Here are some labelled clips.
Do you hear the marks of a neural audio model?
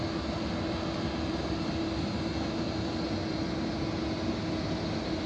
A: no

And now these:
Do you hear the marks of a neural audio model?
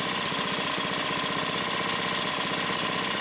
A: no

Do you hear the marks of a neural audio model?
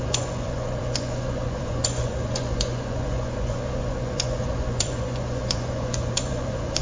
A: yes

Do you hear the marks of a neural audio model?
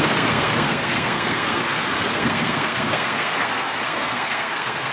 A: yes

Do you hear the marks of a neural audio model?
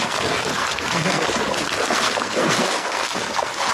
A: yes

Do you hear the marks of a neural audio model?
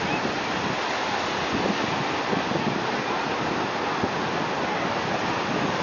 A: no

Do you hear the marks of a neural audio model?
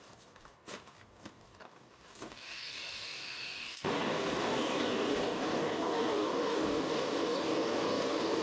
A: yes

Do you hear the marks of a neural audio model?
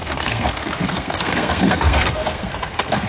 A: yes